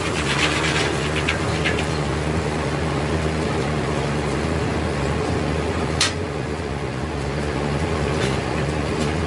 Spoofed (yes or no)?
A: yes